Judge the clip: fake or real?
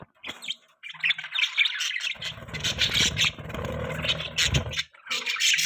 real